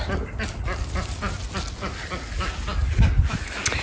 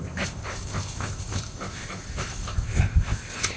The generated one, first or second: second